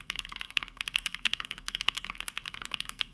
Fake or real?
fake